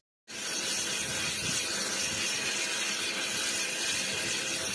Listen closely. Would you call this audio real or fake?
real